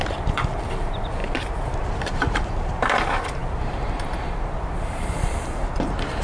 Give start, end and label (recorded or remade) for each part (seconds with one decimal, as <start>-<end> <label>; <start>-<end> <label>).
0.0-1.2 remade; 1.2-2.0 recorded; 2.0-6.2 remade